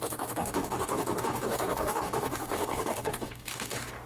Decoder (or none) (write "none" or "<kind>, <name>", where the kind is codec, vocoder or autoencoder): codec, DAC